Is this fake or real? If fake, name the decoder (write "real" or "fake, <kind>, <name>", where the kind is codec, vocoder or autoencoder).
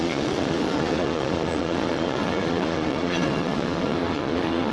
fake, vocoder, Vocos